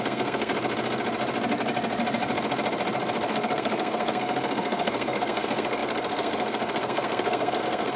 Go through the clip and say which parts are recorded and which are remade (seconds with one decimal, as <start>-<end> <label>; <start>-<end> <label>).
0.0-0.5 remade; 0.5-3.3 recorded; 3.3-8.0 remade